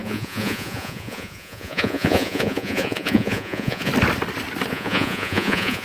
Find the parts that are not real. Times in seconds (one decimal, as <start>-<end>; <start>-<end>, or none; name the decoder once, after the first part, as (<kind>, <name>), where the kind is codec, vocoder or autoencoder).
0.0-3.9 (vocoder, Vocos); 4.7-5.8